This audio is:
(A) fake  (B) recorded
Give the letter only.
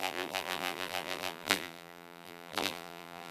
A